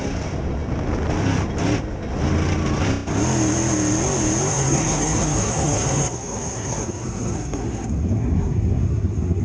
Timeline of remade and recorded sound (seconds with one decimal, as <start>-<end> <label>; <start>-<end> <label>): 0.0-4.5 recorded; 4.5-9.4 remade